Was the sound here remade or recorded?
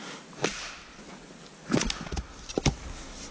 recorded